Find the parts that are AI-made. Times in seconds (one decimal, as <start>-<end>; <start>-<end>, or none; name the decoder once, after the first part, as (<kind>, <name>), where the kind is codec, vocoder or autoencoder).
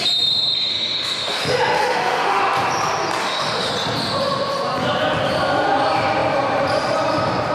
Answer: 0.7-1.4 (autoencoder, DAC-VAE); 1.8-2.4; 3.2-3.7